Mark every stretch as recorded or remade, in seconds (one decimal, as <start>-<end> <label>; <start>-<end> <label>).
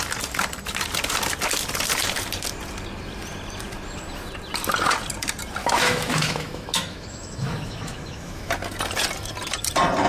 0.0-5.6 recorded; 5.6-8.5 remade; 8.5-10.1 recorded